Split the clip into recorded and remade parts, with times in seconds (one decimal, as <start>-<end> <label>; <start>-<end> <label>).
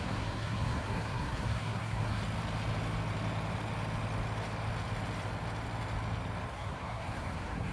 0.0-2.2 remade; 2.2-6.5 recorded; 6.5-7.7 remade